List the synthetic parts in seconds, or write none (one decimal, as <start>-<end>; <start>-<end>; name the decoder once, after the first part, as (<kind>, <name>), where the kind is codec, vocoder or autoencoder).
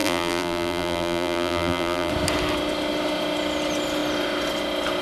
0.0-2.1 (vocoder, BigVGAN v2)